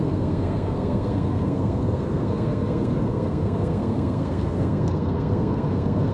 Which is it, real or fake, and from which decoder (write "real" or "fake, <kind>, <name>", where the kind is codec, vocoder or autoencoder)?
fake, codec, SNAC